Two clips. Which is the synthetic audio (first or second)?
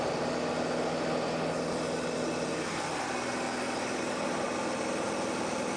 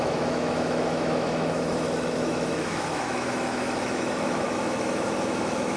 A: second